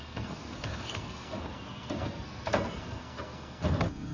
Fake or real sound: fake